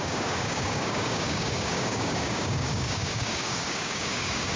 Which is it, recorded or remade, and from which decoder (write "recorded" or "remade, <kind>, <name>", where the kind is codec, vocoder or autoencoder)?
remade, codec, DAC